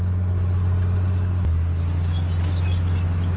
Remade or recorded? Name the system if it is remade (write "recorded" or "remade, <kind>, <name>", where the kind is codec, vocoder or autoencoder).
recorded